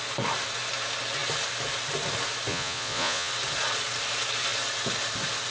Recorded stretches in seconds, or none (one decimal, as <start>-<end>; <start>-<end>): 0.0-2.5; 3.3-5.5